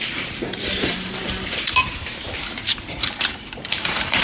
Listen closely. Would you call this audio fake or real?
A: fake